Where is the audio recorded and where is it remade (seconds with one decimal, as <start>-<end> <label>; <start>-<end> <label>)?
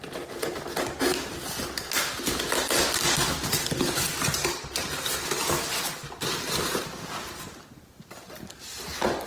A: 0.0-9.3 recorded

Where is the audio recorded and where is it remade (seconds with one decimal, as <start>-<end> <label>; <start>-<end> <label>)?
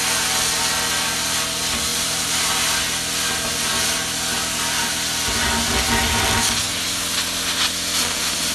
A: 0.0-1.9 recorded; 1.9-2.5 remade; 2.5-8.5 recorded